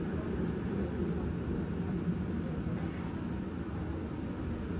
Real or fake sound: real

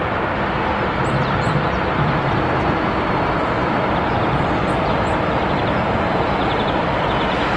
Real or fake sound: real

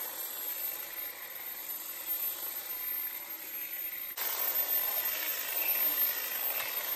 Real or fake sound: real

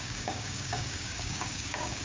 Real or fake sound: fake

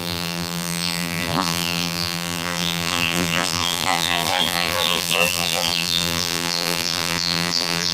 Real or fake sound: fake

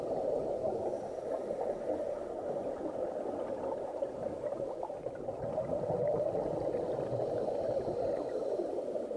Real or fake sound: real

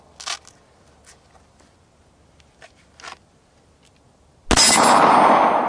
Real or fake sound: real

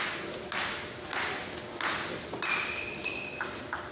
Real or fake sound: real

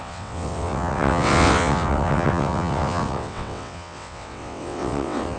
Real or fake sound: fake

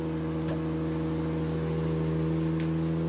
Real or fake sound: real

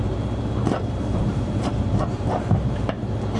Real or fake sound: fake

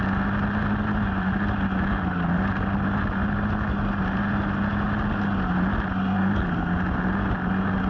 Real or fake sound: real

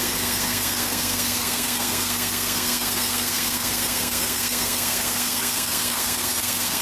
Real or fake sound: fake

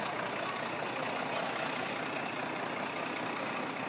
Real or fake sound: real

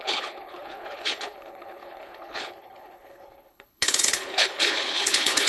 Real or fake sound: fake